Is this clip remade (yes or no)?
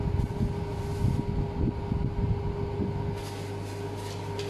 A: no